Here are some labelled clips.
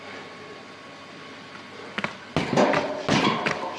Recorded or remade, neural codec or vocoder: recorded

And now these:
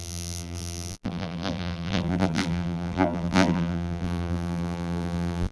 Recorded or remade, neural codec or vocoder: remade, vocoder, BigVGAN v2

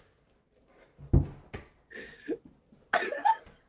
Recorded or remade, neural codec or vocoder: recorded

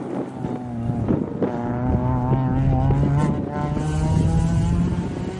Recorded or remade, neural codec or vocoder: recorded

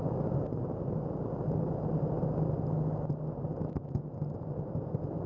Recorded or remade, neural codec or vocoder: recorded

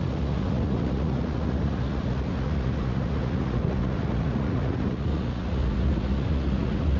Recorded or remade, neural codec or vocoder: remade, vocoder, Vocos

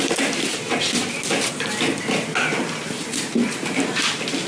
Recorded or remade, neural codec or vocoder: recorded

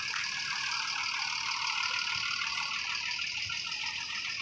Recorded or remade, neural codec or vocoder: recorded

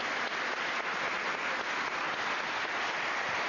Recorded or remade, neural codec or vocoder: recorded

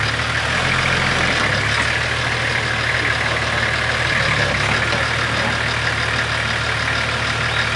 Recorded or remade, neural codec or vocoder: recorded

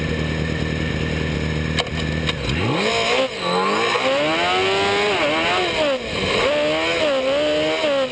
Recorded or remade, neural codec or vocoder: recorded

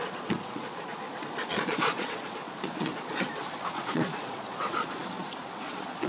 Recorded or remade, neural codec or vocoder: remade, vocoder, Vocos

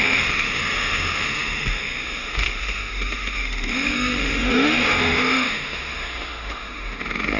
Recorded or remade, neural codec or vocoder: remade, autoencoder, DAC-VAE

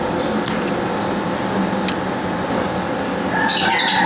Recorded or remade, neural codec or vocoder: recorded